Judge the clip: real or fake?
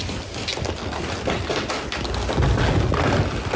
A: real